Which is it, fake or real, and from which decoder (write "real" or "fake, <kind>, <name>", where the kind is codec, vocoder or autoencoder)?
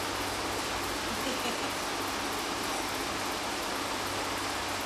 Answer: real